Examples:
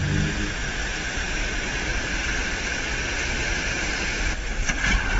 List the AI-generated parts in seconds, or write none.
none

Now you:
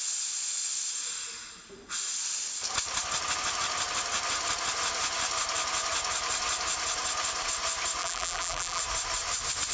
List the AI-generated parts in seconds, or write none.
8.0-8.8

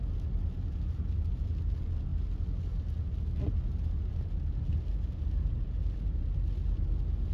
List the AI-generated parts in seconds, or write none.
none

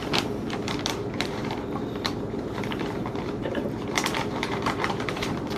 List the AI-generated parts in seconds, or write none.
0.0-5.6

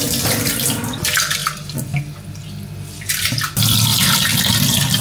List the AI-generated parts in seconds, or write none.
3.9-5.0

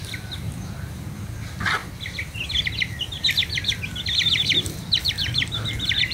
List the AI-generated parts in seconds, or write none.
1.8-2.3; 3.4-4.8